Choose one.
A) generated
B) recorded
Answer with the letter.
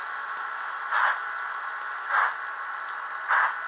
B